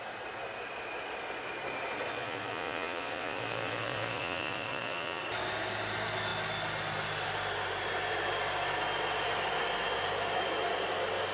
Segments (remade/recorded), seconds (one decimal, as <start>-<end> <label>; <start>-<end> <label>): 0.0-2.1 recorded; 2.1-5.2 remade; 5.2-11.3 recorded